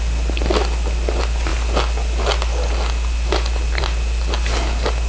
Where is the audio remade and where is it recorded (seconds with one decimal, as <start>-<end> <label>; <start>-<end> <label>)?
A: 0.0-5.1 recorded